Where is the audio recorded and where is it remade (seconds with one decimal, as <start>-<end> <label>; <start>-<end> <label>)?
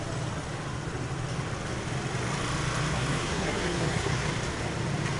0.0-2.9 recorded; 2.9-4.3 remade; 4.3-5.2 recorded